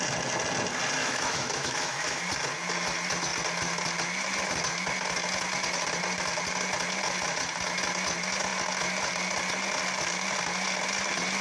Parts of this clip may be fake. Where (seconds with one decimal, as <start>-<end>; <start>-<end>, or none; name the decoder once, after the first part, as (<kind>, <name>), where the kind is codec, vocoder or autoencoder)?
1.0-2.2 (autoencoder, DAC-VAE)